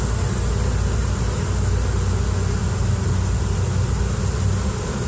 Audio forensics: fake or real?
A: real